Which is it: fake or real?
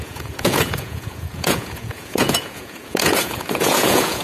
fake